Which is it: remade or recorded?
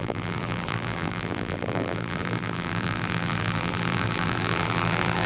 remade